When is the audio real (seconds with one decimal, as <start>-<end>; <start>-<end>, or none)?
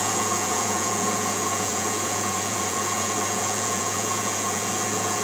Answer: none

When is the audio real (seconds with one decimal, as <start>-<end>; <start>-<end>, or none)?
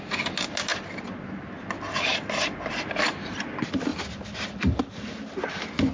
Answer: 0.0-3.9; 4.8-5.9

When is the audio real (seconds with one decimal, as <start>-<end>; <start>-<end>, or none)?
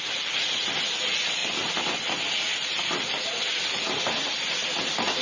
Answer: 0.0-5.2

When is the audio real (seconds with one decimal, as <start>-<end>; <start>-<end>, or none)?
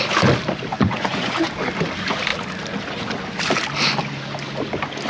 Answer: 0.0-0.7; 1.5-5.1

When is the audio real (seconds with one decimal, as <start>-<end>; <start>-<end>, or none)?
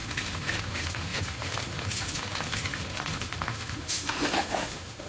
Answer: none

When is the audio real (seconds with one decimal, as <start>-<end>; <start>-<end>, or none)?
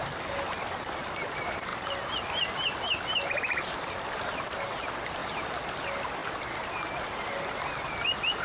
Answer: 0.0-8.4